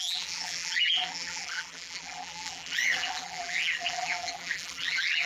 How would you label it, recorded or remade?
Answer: remade